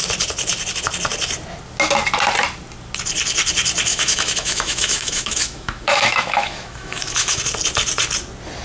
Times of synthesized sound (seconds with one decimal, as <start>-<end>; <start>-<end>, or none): 3.9-7.4